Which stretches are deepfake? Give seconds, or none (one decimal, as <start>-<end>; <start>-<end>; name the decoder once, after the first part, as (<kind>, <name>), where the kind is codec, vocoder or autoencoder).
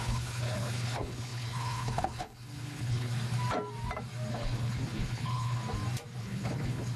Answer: 0.0-3.1 (codec, HILCodec); 4.3-5.6; 6.2-7.0